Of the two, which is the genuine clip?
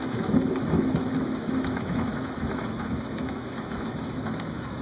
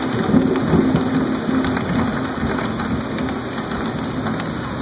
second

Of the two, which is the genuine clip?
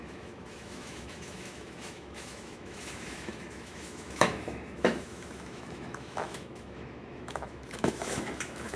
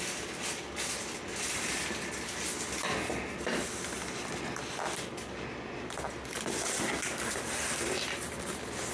second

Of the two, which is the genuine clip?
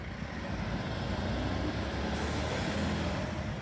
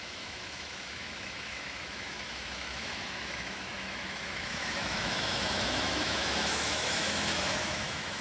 first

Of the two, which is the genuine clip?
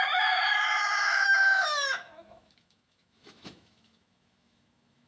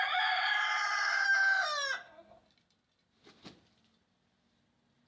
second